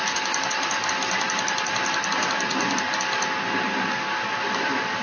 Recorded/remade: recorded